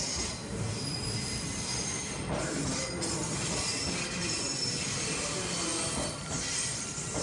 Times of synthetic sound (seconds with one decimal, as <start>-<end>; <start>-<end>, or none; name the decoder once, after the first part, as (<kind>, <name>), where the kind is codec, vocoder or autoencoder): none